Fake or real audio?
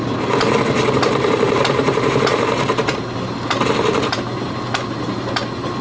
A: real